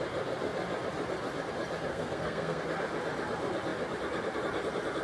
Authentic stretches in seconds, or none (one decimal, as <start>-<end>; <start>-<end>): 0.0-1.9; 2.6-5.0

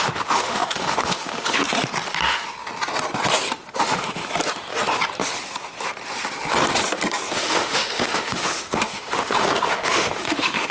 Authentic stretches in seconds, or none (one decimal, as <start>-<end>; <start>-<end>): 1.6-3.8; 4.2-7.3

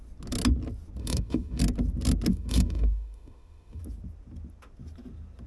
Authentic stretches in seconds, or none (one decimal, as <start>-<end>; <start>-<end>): 0.0-1.0; 1.6-2.3; 3.8-5.5

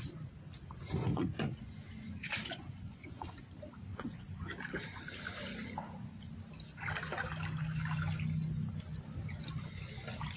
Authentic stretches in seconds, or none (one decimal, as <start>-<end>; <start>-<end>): 0.0-1.1; 3.4-3.9; 4.4-10.4